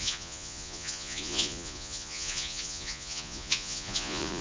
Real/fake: fake